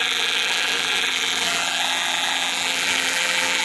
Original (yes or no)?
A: no